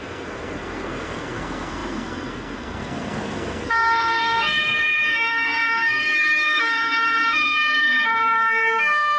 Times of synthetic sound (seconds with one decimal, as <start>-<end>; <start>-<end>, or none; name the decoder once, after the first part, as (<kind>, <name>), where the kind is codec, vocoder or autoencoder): 0.0-9.2 (codec, SNAC)